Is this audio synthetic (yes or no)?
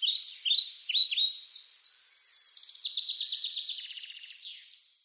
no